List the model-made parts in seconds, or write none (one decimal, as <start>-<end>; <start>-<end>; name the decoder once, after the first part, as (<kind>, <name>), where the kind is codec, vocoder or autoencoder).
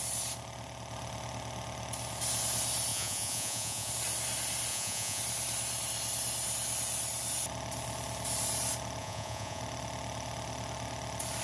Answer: 2.9-3.9 (vocoder, Vocos); 4.7-5.2; 9.0-9.6